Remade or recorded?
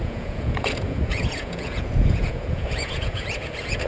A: remade